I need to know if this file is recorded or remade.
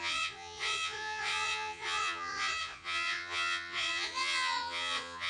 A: remade